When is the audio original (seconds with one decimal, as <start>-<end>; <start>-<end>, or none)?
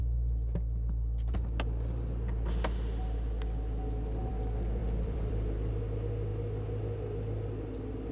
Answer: 0.0-4.8; 5.7-8.1